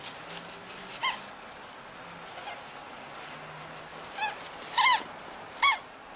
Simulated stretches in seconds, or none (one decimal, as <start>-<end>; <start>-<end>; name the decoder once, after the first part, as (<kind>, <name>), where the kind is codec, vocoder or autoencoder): 1.0-2.6 (vocoder, BigVGAN v2); 3.9-6.2